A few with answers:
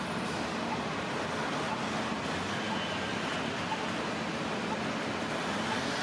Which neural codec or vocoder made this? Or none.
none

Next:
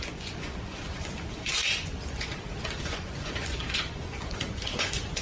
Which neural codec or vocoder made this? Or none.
vocoder, Vocos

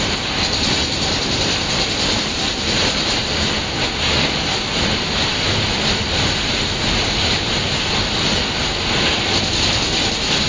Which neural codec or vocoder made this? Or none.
none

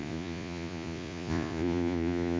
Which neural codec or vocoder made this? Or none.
vocoder, Vocos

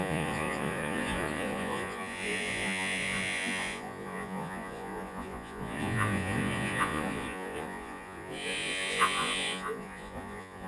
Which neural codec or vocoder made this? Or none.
vocoder, Vocos